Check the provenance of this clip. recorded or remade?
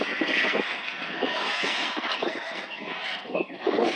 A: remade